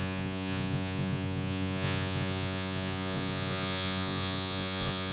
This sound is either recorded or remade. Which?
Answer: remade